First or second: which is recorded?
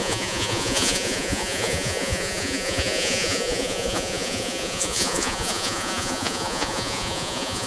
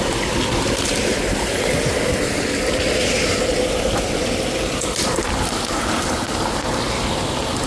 second